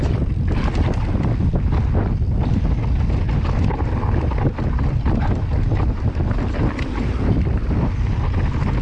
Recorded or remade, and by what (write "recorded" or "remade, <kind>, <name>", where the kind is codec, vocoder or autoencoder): recorded